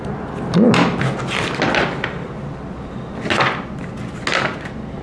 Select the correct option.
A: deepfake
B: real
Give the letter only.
B